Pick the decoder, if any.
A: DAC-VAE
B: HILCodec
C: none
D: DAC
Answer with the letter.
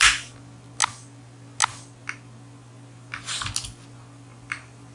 C